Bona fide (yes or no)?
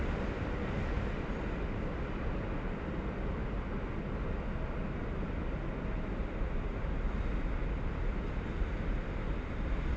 yes